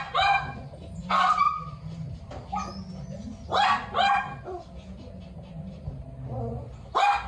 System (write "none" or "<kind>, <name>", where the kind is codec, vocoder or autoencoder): none